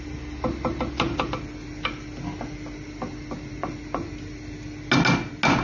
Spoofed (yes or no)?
no